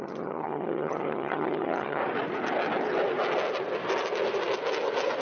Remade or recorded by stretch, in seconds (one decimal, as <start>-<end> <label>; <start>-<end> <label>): 0.0-2.0 remade; 2.0-5.2 recorded